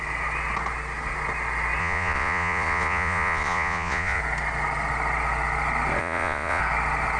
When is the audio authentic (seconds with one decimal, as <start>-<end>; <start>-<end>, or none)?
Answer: 0.0-1.8; 4.2-6.0; 6.6-7.2